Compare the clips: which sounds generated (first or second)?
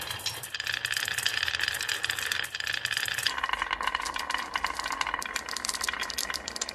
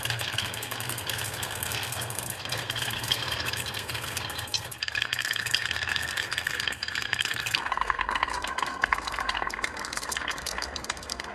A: second